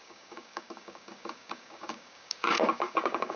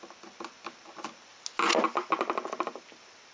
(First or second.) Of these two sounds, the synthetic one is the first